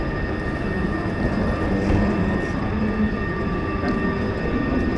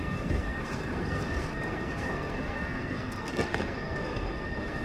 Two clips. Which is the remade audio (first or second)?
second